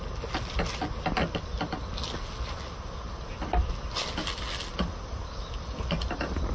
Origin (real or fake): real